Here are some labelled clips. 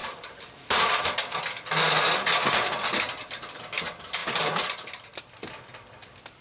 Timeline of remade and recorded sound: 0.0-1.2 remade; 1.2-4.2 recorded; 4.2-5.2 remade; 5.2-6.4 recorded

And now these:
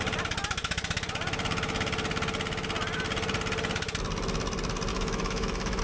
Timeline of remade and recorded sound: 0.0-4.9 recorded; 4.9-5.8 remade

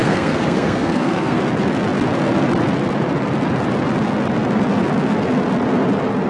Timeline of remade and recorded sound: 0.0-1.4 remade; 1.4-6.3 recorded

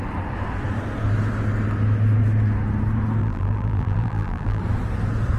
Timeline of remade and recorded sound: 0.0-3.2 recorded; 3.2-4.6 remade; 4.6-5.4 recorded

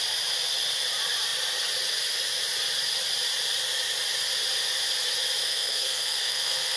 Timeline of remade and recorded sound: 0.0-5.4 recorded; 5.4-6.8 remade

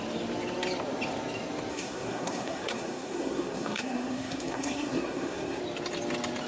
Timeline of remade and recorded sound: 0.0-1.7 recorded; 1.7-5.6 remade; 5.6-6.5 recorded